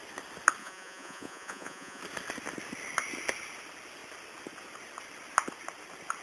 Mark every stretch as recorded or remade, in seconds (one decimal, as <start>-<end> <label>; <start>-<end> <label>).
0.0-0.6 recorded; 0.6-2.0 remade; 2.0-6.2 recorded